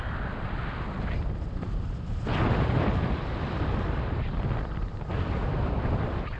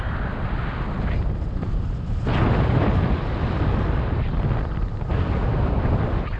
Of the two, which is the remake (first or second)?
first